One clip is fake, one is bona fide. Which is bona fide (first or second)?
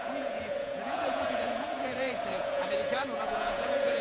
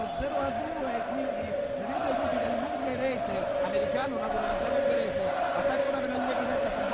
second